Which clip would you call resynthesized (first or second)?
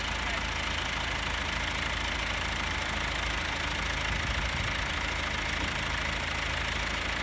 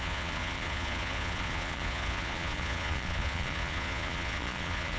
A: second